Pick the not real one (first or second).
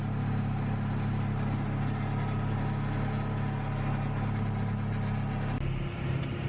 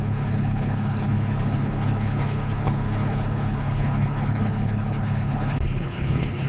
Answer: second